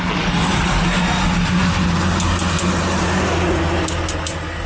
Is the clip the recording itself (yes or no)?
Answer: yes